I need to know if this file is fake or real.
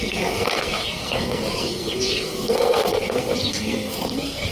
fake